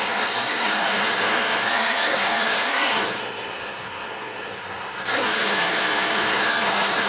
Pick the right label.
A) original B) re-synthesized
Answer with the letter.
B